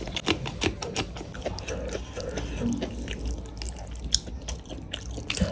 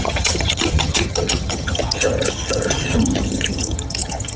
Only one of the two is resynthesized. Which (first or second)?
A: second